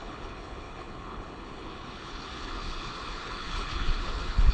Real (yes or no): no